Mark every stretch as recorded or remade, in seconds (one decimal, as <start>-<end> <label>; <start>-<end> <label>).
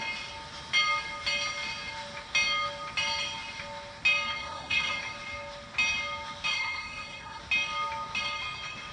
0.0-4.4 recorded; 4.4-4.9 remade; 4.9-6.5 recorded; 6.5-7.4 remade; 7.4-8.9 recorded